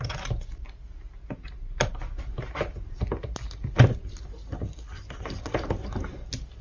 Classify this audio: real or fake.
real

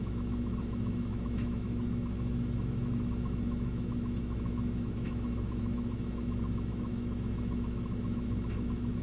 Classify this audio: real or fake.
fake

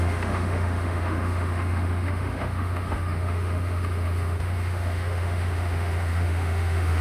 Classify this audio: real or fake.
fake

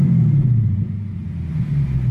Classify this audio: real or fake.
real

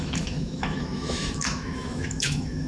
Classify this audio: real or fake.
fake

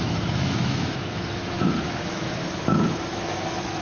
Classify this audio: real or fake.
fake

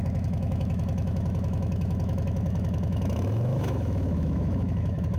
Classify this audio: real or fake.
fake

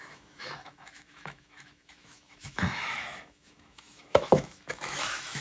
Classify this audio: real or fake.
fake